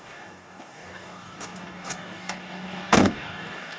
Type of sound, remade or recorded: remade